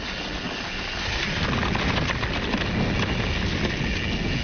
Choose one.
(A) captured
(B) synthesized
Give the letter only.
A